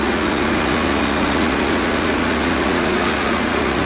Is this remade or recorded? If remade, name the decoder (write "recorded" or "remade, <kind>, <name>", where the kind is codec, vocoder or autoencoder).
remade, vocoder, Vocos